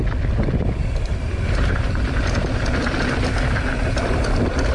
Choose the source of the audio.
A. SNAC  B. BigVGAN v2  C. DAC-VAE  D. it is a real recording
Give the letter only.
D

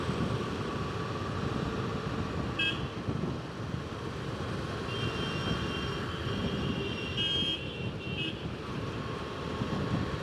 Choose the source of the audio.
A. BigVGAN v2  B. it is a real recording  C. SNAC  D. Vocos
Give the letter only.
B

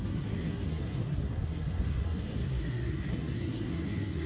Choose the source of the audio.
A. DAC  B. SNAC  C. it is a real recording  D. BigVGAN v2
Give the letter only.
B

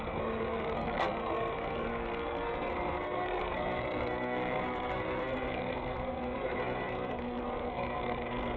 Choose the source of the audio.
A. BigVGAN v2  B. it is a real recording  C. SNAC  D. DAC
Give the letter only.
C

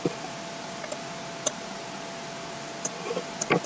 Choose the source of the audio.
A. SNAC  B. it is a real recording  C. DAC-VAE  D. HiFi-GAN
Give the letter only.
B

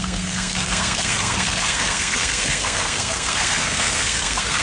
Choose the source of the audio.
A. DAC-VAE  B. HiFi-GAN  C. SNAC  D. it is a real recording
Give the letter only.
C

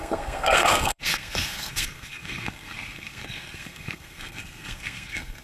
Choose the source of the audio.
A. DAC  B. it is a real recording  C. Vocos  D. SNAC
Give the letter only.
D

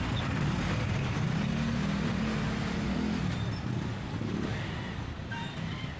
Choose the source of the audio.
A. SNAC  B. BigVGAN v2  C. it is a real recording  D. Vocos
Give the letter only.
C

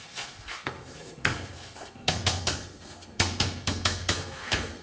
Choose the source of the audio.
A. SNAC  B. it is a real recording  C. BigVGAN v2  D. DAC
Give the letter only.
A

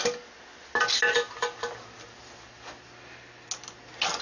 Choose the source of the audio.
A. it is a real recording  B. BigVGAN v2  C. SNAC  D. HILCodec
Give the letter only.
A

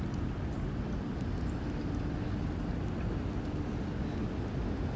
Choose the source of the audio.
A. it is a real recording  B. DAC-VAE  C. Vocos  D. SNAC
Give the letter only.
A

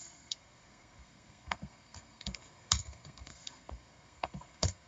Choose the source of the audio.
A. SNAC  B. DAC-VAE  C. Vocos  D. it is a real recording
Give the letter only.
A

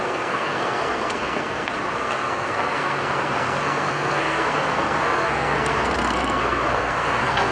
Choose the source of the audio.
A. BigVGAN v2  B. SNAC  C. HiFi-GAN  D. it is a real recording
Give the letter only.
B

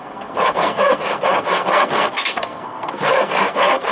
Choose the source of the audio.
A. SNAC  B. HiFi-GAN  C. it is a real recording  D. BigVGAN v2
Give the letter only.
A